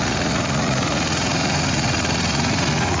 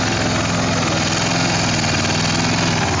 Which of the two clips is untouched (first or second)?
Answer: second